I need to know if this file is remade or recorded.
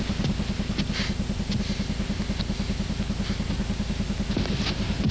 recorded